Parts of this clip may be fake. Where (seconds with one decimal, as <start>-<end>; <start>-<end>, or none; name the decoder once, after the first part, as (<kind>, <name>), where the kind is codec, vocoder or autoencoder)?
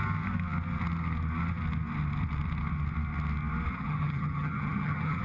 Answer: 3.7-5.2 (vocoder, HiFi-GAN)